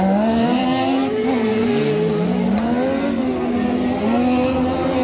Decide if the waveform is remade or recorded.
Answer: recorded